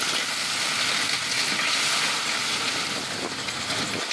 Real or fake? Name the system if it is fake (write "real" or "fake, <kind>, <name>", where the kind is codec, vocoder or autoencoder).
real